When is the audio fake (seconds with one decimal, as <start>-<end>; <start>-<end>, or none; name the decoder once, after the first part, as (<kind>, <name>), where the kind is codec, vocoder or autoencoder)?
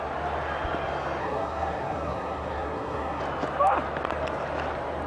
1.2-3.2 (codec, SNAC)